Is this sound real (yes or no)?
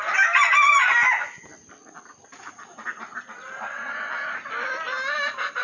yes